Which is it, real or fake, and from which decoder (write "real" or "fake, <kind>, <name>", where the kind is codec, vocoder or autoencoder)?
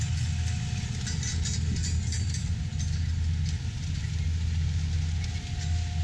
real